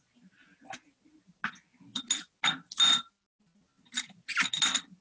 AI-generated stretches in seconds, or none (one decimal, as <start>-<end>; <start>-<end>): none